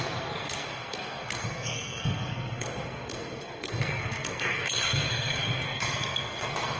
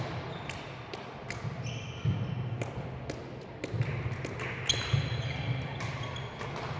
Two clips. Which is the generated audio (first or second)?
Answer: first